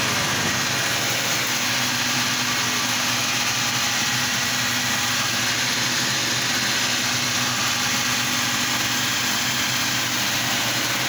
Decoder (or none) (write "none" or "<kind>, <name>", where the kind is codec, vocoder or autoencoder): none